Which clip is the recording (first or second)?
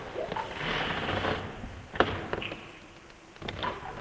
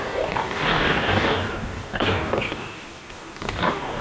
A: first